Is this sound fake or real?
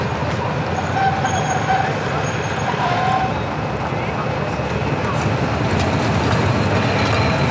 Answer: real